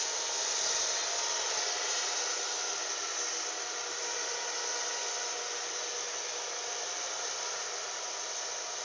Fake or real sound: real